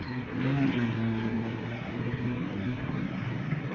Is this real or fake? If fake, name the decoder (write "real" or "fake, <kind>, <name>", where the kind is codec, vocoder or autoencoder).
fake, codec, SNAC